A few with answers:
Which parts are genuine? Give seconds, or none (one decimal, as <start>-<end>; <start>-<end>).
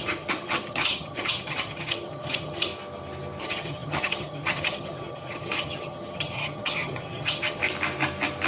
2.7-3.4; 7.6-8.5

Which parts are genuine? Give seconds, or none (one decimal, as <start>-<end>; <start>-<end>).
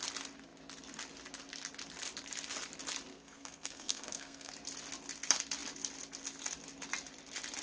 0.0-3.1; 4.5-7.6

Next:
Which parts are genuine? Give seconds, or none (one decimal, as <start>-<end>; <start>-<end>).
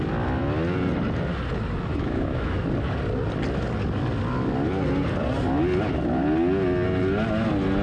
0.0-1.9; 2.7-7.8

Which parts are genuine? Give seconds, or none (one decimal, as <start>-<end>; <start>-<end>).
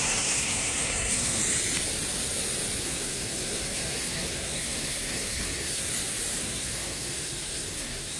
1.4-2.8; 5.9-6.4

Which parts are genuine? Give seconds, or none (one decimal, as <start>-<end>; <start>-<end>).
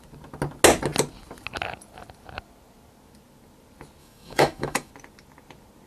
0.0-4.0; 4.9-5.9